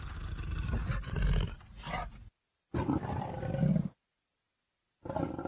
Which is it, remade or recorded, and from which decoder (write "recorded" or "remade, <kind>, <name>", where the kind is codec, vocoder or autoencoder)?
recorded